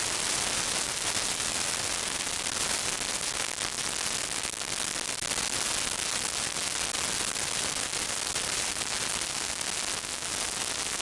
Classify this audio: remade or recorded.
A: recorded